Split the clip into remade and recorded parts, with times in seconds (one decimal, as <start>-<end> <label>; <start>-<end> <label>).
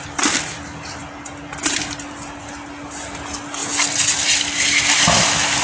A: 0.0-5.6 recorded